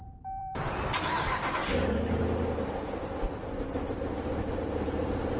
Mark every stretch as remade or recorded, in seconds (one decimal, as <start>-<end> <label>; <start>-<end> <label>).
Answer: 0.0-1.6 remade; 1.6-4.8 recorded; 4.8-5.4 remade